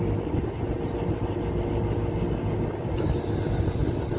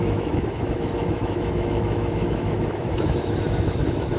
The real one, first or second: first